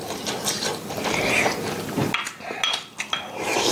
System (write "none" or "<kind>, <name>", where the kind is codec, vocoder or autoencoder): none